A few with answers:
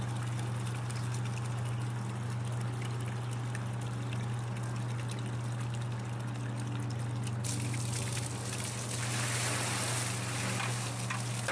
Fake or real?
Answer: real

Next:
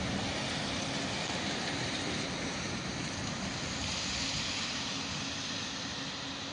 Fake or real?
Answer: real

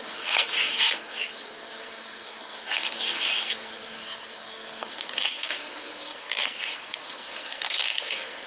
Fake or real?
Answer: fake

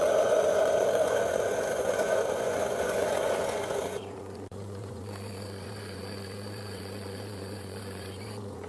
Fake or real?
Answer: fake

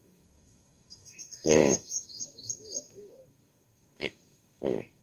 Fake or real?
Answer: fake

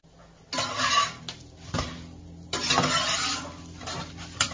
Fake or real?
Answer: real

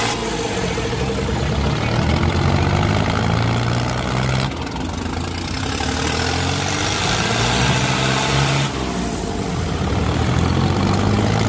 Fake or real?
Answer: real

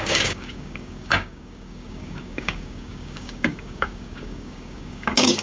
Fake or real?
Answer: fake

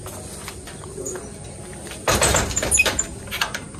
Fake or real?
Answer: real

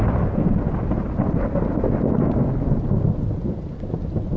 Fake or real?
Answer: real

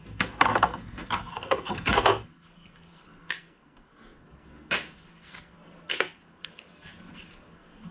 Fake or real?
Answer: fake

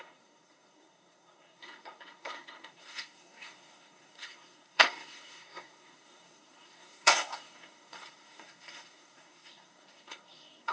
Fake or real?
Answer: fake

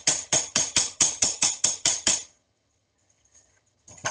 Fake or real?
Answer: fake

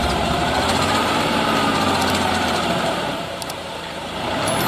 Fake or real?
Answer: fake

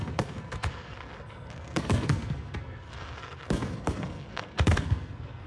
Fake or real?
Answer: fake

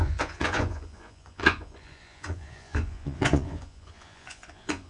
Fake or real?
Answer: fake